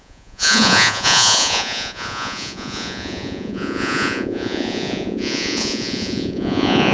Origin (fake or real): fake